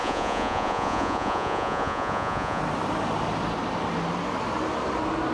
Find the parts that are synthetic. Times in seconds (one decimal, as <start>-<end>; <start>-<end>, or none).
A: 0.0-2.6